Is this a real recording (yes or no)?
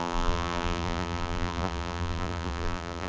no